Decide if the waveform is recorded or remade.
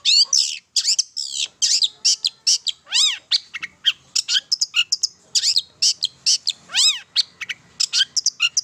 recorded